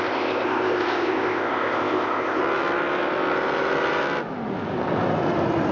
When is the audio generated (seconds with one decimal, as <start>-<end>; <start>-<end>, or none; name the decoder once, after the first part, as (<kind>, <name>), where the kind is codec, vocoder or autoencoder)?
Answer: 0.0-2.4 (codec, ZipCodec)